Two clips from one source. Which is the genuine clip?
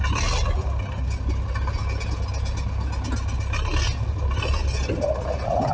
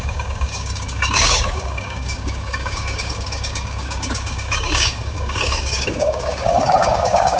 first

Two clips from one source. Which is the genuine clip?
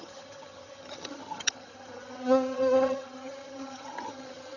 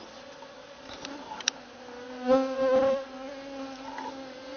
second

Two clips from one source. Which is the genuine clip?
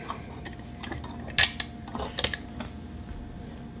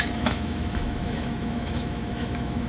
first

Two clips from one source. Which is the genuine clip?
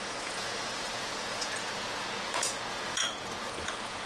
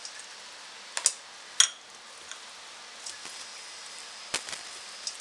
second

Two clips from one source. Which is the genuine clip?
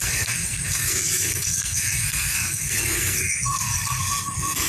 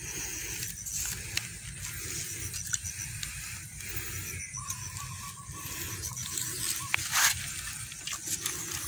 second